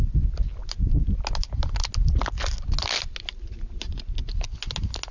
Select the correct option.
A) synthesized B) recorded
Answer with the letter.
B